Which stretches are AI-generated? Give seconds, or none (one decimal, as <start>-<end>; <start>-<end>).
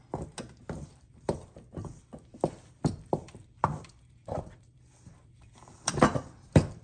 0.9-6.8